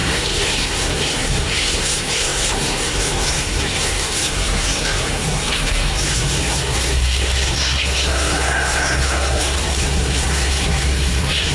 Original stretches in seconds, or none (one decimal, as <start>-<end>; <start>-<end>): none